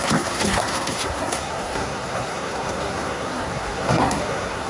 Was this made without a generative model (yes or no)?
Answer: no